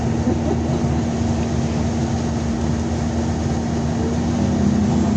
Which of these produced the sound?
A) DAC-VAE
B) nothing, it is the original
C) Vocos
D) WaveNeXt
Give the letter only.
B